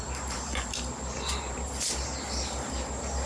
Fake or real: real